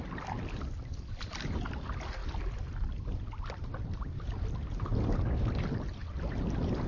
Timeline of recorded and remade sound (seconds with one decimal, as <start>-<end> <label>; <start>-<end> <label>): 0.0-6.9 recorded

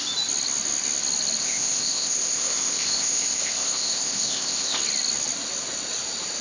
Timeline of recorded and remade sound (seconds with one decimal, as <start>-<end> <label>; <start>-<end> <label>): 0.0-1.4 recorded; 1.4-4.8 remade; 4.8-6.4 recorded